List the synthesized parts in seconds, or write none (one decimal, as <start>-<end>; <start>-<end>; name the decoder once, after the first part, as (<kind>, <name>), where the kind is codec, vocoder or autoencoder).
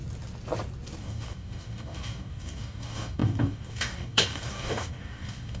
1.0-5.6 (codec, DAC)